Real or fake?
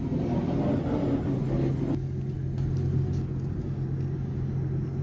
real